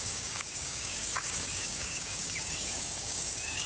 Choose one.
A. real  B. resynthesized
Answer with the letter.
B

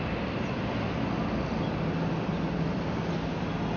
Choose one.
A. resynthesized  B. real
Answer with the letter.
B